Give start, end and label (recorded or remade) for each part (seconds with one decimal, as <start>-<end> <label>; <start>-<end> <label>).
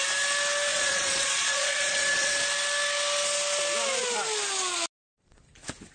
0.0-0.7 recorded; 0.7-2.3 remade; 2.3-5.9 recorded